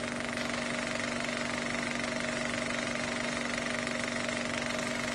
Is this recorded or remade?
recorded